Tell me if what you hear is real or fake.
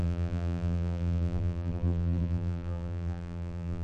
fake